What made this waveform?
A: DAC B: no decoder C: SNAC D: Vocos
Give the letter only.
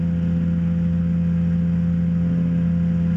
B